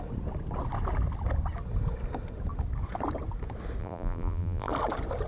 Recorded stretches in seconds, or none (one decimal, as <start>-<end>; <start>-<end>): 0.0-3.8; 4.7-5.3